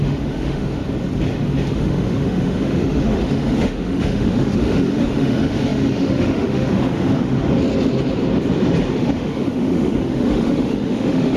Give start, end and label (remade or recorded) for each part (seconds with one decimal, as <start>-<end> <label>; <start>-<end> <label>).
0.0-0.8 remade; 0.8-1.7 recorded; 1.7-7.4 remade; 7.4-8.9 recorded; 8.9-11.4 remade